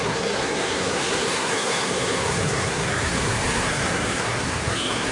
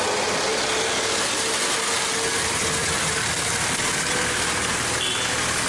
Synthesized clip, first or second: first